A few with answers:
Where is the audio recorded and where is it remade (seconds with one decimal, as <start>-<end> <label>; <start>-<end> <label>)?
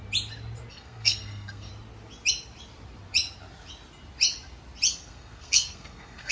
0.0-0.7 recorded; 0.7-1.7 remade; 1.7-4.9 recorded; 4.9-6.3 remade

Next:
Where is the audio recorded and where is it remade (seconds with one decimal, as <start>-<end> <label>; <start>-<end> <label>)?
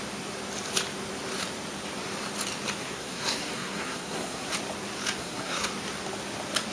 0.0-2.8 recorded; 2.8-4.5 remade; 4.5-5.2 recorded; 5.2-5.7 remade; 5.7-6.7 recorded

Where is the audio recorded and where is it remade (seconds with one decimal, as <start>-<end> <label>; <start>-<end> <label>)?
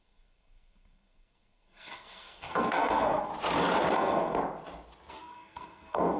0.0-3.3 remade; 3.3-3.9 recorded; 3.9-4.4 remade; 4.4-5.1 recorded; 5.1-6.2 remade